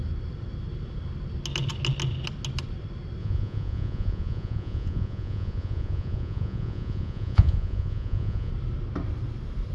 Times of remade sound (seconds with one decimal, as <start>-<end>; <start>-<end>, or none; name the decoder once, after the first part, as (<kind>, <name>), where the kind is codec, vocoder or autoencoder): 3.2-8.5 (vocoder, Vocos)

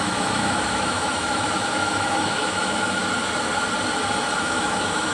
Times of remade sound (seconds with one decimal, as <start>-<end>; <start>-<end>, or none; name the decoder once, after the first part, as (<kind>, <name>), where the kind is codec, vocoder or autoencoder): 0.0-3.0 (autoencoder, DAC-VAE); 4.4-5.1

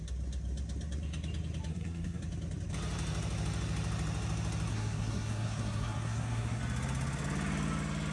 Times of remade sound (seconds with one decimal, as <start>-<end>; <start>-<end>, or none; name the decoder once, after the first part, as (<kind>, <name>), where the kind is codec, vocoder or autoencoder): 1.7-2.2 (codec, SNAC); 4.7-6.6

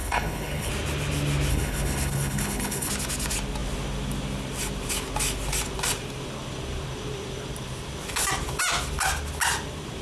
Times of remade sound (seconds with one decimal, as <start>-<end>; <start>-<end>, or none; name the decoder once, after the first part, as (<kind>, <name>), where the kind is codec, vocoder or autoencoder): 0.0-0.7 (codec, HILCodec); 1.5-2.9

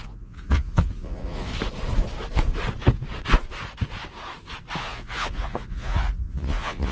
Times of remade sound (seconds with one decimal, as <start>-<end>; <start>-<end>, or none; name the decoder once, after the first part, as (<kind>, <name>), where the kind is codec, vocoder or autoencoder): 0.0-1.5 (vocoder, Vocos); 4.8-6.9

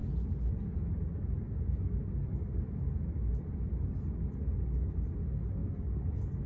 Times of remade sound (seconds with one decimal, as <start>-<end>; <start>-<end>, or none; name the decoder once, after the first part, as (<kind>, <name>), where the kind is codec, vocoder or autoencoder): none

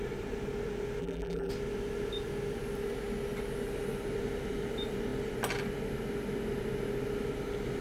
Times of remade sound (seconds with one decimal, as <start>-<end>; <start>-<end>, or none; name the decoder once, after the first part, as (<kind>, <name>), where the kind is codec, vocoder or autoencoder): 1.0-1.5 (vocoder, BigVGAN v2)

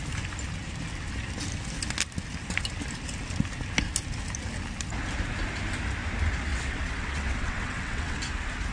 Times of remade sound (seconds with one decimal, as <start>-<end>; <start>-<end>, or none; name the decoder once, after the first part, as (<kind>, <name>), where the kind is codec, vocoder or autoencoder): 6.5-8.2 (vocoder, WaveNeXt)